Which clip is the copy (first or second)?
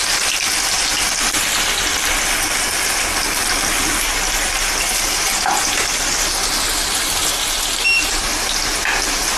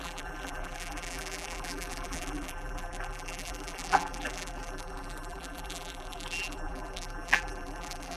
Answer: second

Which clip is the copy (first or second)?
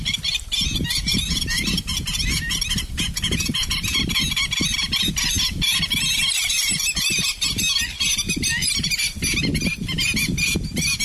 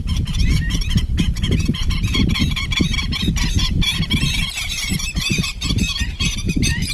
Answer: second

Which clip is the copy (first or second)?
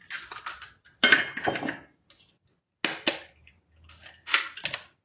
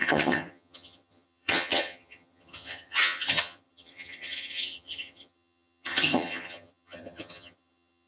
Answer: second